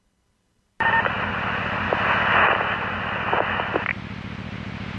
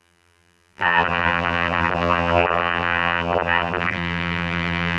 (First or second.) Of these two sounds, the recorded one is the first